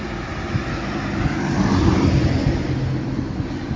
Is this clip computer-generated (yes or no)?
no